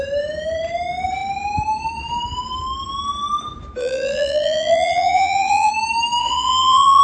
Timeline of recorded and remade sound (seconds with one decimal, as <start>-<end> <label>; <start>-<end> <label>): 0.0-3.8 recorded; 3.8-5.7 remade; 5.7-6.2 recorded; 6.2-7.0 remade